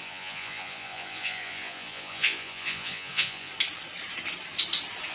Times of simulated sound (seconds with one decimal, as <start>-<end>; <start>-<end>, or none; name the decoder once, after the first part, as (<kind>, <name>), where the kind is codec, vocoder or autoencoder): 0.0-3.5 (vocoder, Vocos)